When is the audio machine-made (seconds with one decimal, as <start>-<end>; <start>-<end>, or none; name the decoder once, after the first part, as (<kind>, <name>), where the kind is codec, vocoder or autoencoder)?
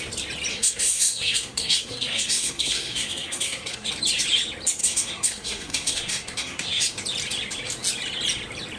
0.5-3.9 (codec, SNAC); 4.8-6.8